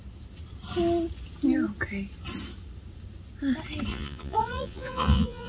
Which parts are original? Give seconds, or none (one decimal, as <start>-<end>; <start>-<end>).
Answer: 0.0-3.9